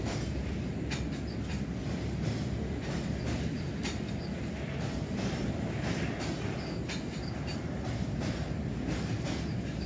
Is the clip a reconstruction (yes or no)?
no